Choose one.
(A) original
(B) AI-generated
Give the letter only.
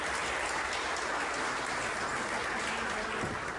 A